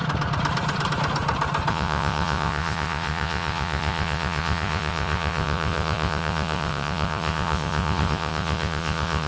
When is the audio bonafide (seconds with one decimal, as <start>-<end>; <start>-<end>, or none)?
0.0-1.7